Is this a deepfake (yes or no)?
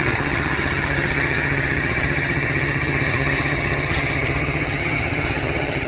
yes